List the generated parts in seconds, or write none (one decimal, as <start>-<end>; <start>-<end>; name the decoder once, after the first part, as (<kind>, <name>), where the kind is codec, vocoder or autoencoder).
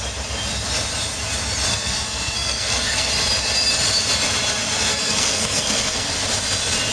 1.7-3.1 (codec, SNAC); 4.9-6.1